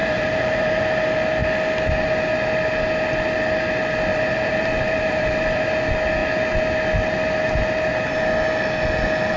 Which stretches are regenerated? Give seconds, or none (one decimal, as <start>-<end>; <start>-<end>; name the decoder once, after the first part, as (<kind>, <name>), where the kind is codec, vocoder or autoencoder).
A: 0.0-0.8 (vocoder, BigVGAN v2); 4.1-5.6